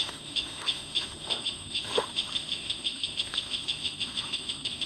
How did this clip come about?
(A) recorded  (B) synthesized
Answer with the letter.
B